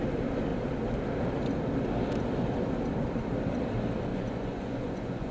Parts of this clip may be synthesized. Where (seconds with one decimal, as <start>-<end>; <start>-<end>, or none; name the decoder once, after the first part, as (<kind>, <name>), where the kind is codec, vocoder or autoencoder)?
4.1-5.3 (vocoder, Vocos)